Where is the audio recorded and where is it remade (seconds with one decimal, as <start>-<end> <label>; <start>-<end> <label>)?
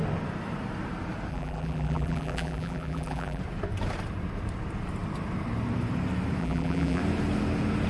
0.0-1.3 recorded; 1.3-3.4 remade; 3.4-6.4 recorded; 6.4-7.0 remade; 7.0-7.9 recorded